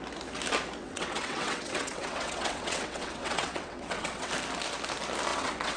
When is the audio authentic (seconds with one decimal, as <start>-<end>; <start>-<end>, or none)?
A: 0.0-0.8; 4.3-5.3